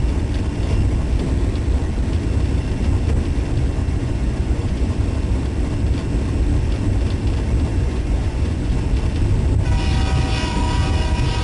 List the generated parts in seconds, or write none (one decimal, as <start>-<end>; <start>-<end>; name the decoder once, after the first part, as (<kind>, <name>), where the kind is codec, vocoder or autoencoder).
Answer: 3.8-5.0 (vocoder, Vocos); 7.7-8.8